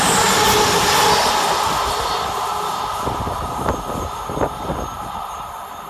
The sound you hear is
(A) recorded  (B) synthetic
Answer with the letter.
A